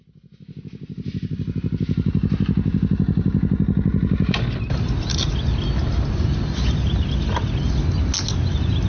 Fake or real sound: real